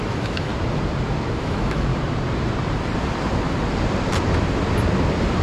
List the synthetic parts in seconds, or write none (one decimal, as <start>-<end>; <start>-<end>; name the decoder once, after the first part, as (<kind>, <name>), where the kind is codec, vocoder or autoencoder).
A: 0.0-0.5 (autoencoder, DAC-VAE); 1.4-1.9